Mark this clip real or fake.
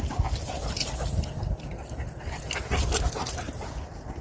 real